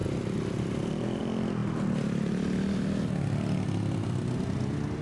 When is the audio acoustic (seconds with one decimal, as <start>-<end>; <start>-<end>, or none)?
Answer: 0.0-5.0